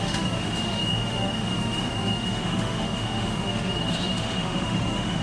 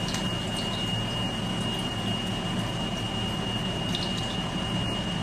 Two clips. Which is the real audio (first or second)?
second